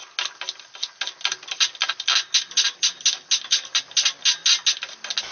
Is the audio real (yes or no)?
yes